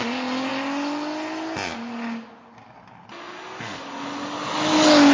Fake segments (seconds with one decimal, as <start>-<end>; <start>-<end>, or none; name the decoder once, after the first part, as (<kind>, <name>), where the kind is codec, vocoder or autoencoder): none